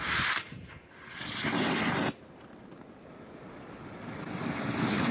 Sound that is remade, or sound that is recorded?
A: recorded